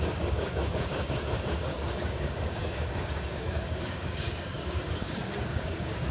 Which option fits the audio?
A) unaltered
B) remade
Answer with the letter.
B